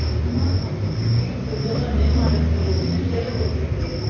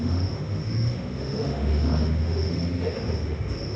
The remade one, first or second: second